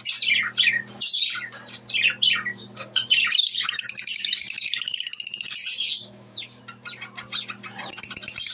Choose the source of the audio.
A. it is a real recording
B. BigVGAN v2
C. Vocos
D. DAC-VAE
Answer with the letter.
B